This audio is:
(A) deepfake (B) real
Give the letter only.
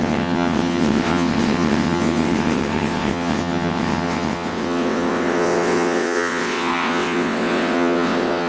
A